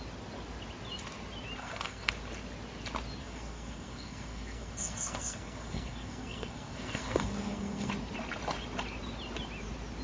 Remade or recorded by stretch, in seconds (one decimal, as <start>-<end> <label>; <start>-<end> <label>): 0.0-1.6 recorded; 1.6-2.1 remade; 2.1-3.2 recorded; 3.2-7.9 remade; 7.9-10.0 recorded